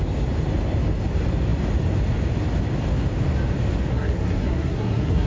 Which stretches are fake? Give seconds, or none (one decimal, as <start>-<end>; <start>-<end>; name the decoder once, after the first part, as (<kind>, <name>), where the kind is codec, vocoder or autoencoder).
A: 3.9-5.3 (codec, SNAC)